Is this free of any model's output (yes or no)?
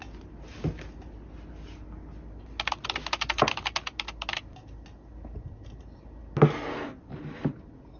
yes